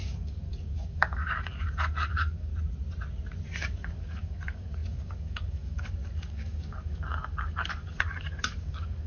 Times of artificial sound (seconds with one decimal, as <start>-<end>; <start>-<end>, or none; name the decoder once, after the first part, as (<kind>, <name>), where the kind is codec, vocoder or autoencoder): 0.0-2.5 (codec, DAC); 3.6-9.1